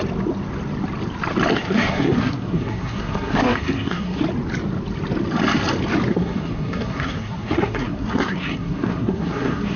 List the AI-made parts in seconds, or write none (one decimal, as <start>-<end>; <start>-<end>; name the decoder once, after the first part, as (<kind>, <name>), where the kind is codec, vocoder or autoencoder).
1.5-4.2 (codec, SNAC); 6.1-9.8